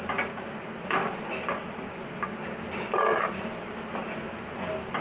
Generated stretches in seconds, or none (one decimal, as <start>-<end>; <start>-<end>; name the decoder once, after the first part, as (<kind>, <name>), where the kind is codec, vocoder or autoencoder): none